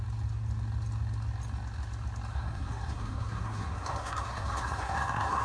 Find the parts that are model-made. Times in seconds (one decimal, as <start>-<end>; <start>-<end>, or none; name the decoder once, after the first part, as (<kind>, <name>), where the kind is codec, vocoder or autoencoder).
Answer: 2.3-5.4 (codec, SNAC)